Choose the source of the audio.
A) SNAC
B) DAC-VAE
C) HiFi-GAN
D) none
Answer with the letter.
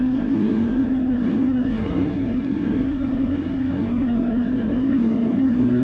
A